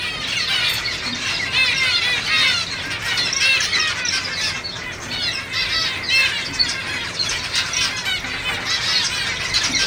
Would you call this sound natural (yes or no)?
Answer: yes